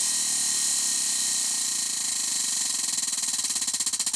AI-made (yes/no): no